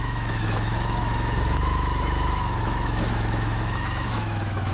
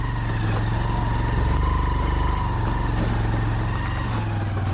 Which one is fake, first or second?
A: first